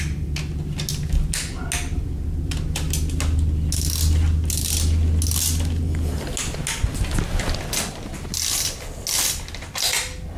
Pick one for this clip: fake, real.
real